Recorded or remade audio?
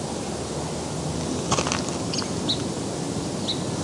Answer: recorded